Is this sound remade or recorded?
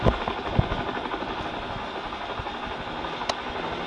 recorded